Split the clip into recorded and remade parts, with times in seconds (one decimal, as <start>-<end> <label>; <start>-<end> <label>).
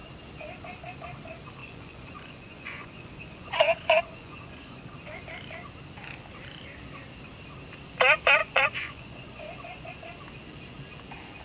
0.0-1.6 recorded; 1.6-5.2 remade; 5.2-8.4 recorded; 8.4-9.9 remade; 9.9-11.4 recorded